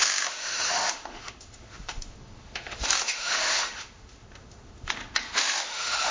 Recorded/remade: remade